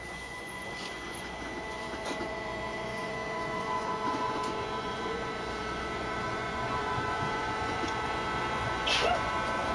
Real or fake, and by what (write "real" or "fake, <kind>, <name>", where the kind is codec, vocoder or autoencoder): fake, vocoder, Vocos